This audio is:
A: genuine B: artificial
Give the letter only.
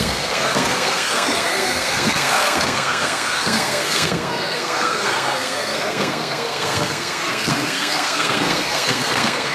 B